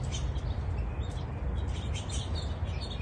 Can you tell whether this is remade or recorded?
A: recorded